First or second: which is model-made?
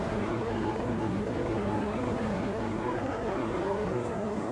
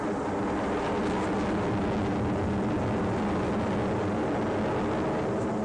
first